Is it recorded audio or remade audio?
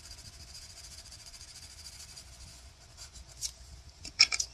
remade